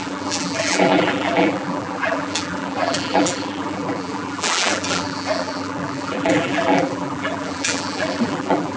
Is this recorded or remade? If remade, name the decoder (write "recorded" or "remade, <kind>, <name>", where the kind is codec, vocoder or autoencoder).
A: remade, vocoder, BigVGAN v2